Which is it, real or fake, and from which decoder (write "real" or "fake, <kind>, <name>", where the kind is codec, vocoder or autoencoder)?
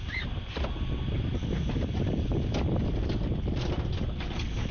real